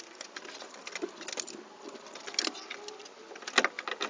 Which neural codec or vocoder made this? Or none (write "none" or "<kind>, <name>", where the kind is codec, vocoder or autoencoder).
none